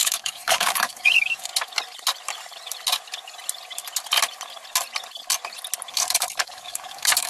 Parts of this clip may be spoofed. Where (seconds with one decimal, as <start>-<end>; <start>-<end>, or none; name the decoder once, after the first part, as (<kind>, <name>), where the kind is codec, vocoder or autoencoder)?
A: 0.0-1.5 (codec, DAC); 5.9-7.3